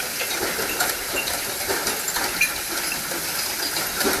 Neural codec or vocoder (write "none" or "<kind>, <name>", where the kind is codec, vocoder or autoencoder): none